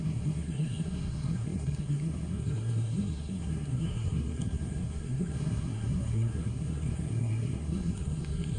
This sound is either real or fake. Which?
fake